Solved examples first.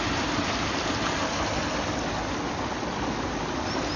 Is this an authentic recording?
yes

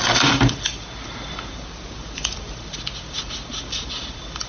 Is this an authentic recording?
no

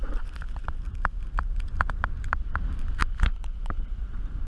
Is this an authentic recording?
no